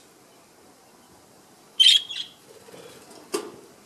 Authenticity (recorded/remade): recorded